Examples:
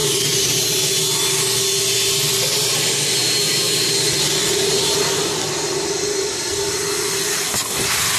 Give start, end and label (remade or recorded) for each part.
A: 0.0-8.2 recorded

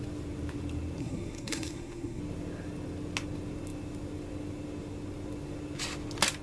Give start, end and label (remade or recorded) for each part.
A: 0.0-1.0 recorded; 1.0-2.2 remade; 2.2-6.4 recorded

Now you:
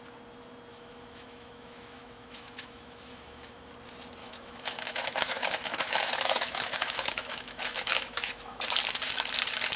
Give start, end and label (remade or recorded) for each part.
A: 0.0-0.7 recorded; 0.7-3.7 remade; 3.7-4.2 recorded; 4.2-8.6 remade; 8.6-9.8 recorded

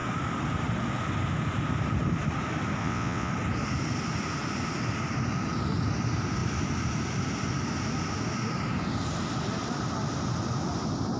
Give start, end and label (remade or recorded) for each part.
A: 0.0-2.8 recorded; 2.8-3.3 remade; 3.3-11.2 recorded